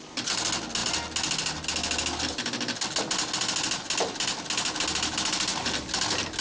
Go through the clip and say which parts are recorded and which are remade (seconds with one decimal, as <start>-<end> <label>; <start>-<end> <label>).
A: 0.0-6.4 recorded